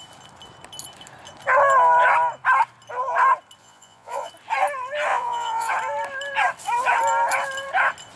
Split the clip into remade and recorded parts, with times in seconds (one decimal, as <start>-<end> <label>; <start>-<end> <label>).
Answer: 0.0-3.6 recorded; 3.6-4.3 remade; 4.3-5.1 recorded; 5.1-5.7 remade; 5.7-8.2 recorded